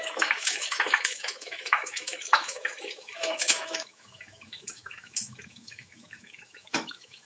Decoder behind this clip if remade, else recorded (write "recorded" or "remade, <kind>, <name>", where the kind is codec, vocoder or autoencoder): remade, autoencoder, DAC-VAE